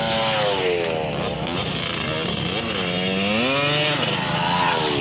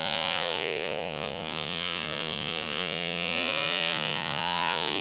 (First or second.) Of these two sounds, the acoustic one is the first